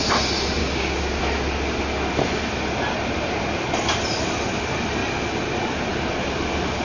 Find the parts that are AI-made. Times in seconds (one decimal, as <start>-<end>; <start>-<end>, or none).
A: 0.6-1.2